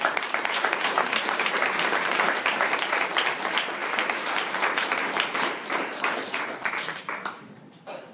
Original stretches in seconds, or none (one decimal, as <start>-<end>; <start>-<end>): none